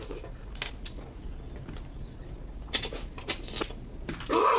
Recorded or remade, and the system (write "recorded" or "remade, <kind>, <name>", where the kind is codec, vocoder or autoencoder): recorded